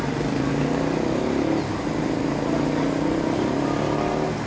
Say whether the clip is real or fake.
real